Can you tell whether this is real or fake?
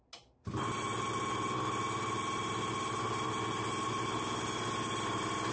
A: real